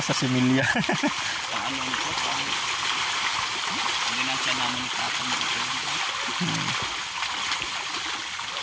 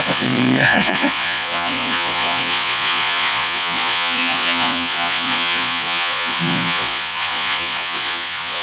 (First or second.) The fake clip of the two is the second